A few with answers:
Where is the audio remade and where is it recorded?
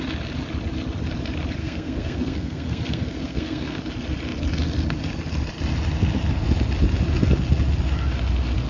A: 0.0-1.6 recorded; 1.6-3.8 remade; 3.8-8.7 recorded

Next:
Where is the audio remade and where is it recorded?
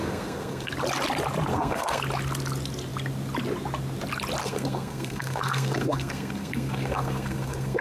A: 0.0-0.7 remade; 0.7-1.5 recorded; 1.5-2.0 remade; 2.0-4.4 recorded; 4.4-7.8 remade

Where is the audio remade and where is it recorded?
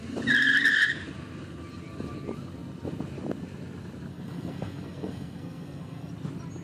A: 0.0-4.1 recorded; 4.1-6.1 remade; 6.1-6.6 recorded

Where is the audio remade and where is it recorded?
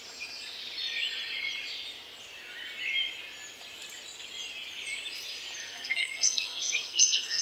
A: 0.0-5.6 recorded; 5.6-7.4 remade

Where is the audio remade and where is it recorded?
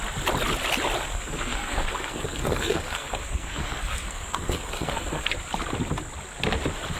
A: 0.0-1.1 recorded; 1.1-5.3 remade; 5.3-7.0 recorded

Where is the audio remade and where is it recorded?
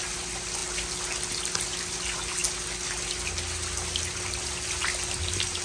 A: 0.0-5.6 recorded